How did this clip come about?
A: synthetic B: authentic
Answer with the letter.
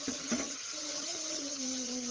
A